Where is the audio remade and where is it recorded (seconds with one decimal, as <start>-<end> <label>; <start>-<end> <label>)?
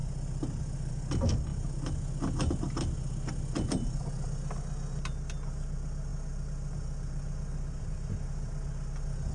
0.0-9.3 recorded